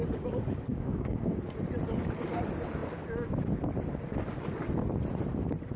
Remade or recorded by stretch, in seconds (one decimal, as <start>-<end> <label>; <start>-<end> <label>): 0.0-0.7 recorded; 0.7-1.4 remade; 1.4-5.8 recorded